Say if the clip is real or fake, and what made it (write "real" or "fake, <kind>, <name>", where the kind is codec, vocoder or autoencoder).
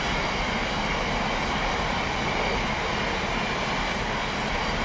real